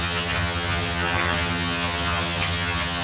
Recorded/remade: remade